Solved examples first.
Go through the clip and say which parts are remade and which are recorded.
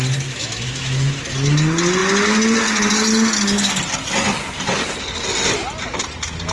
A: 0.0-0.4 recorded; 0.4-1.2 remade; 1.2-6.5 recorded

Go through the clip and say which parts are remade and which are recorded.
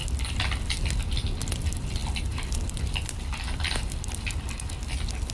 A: 0.0-5.3 recorded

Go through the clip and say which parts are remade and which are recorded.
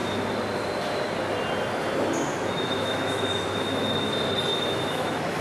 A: 0.0-2.3 recorded; 2.3-4.1 remade; 4.1-4.5 recorded; 4.5-5.4 remade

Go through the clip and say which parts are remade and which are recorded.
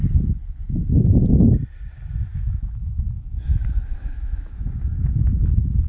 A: 0.0-2.3 recorded; 2.3-4.7 remade; 4.7-5.9 recorded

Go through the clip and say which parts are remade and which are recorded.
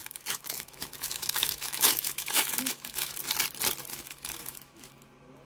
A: 0.0-3.2 remade; 3.2-3.9 recorded; 3.9-4.9 remade; 4.9-5.4 recorded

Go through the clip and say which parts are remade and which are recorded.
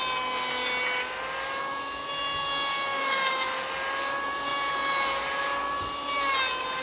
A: 0.0-2.7 recorded; 2.7-3.6 remade; 3.6-6.8 recorded